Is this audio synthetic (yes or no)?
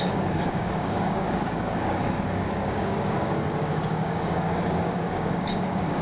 yes